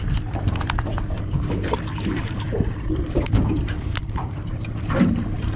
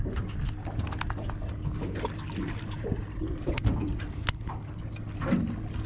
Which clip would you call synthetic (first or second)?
first